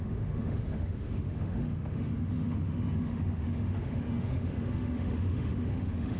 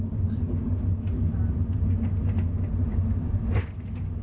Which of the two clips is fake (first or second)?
first